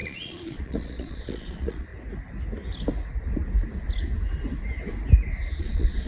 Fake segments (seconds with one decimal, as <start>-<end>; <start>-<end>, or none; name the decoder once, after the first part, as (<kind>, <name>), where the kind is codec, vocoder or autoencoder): 0.0-1.9 (vocoder, Vocos); 5.6-6.1